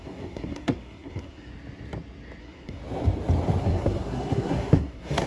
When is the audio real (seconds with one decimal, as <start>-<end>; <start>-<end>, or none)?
1.5-2.4; 2.8-3.6